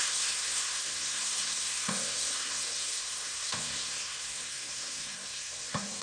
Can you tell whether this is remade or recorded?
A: remade